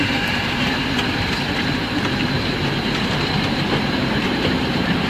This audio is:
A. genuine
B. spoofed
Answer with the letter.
B